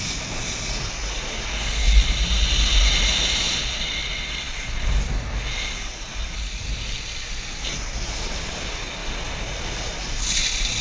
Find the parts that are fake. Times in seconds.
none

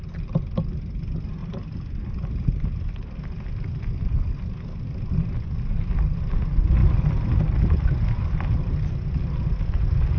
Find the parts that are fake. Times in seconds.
1.4-2.9 (vocoder, BigVGAN v2); 6.8-8.4

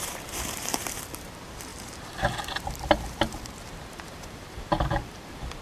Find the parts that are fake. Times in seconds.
0.0-5.6 (vocoder, BigVGAN v2)

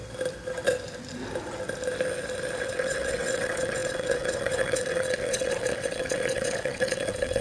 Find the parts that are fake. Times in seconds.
2.6-7.4 (vocoder, WaveNeXt)